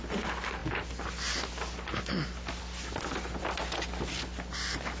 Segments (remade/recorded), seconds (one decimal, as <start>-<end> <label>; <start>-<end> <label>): 0.0-5.0 recorded